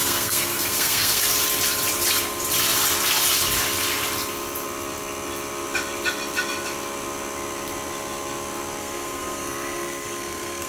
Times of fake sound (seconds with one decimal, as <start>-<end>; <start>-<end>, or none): 0.0-1.2; 8.8-10.7